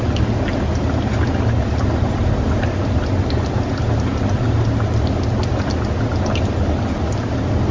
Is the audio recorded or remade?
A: recorded